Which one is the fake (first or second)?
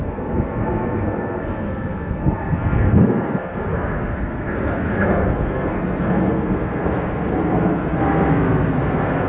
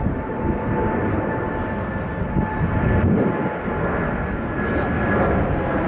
first